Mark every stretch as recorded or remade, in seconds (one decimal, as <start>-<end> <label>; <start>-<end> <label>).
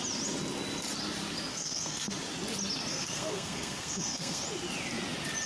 0.0-1.5 recorded; 1.5-2.1 remade; 2.1-2.9 recorded; 2.9-4.4 remade; 4.4-5.5 recorded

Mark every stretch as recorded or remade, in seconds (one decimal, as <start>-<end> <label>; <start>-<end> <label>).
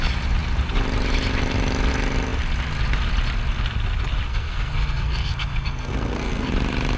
0.0-4.3 recorded; 4.3-6.5 remade; 6.5-7.0 recorded